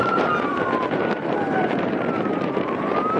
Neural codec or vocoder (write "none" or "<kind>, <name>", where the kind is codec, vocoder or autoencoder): vocoder, BigVGAN v2